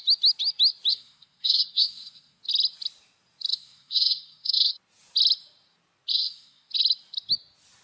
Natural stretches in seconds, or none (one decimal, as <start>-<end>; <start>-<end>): 0.0-0.9; 2.4-3.5; 4.7-6.1; 6.7-7.8